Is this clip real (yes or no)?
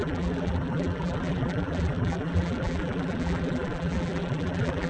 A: no